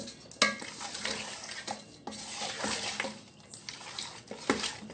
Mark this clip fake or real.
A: real